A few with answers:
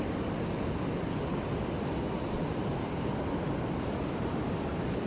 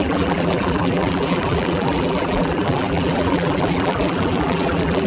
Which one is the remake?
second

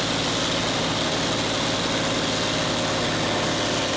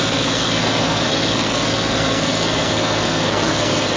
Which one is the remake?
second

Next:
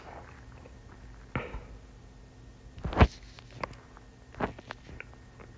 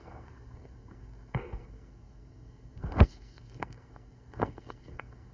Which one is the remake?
second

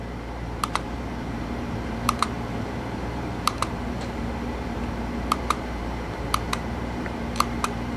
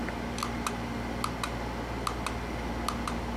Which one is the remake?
first